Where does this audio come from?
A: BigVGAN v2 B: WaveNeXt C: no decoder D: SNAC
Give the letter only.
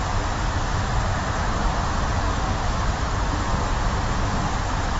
C